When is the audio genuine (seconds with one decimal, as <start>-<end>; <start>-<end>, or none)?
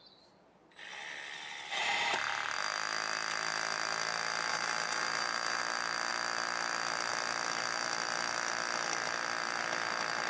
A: 0.0-4.5; 5.6-10.3